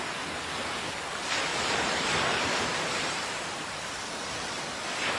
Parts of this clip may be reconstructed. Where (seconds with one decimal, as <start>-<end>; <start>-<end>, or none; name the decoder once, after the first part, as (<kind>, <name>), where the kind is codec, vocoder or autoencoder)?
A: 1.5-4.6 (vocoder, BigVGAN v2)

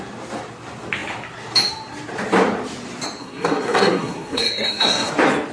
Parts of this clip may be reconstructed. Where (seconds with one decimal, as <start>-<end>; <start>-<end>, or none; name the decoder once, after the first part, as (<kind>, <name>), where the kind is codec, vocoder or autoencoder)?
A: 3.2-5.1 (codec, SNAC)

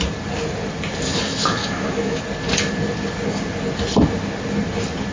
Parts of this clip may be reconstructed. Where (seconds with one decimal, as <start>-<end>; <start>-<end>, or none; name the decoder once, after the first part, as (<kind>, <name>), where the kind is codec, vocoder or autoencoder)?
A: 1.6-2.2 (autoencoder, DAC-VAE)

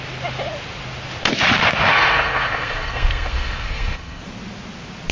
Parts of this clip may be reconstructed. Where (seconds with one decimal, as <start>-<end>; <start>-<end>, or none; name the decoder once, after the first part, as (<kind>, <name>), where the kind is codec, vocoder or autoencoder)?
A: 1.9-4.2 (codec, SNAC)

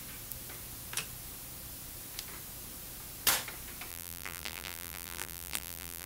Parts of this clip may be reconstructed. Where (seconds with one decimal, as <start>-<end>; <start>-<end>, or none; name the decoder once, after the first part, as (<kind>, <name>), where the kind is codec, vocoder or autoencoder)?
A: 3.9-6.1 (vocoder, BigVGAN v2)

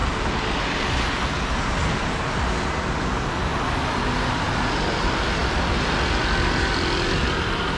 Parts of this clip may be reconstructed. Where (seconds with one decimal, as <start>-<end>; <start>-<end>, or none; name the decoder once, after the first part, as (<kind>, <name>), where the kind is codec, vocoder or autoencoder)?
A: none